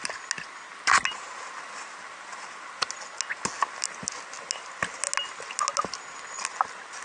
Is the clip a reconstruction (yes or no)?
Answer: no